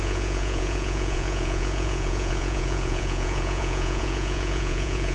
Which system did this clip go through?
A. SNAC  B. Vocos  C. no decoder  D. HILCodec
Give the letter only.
B